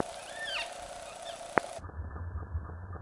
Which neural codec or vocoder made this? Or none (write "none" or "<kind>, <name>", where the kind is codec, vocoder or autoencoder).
none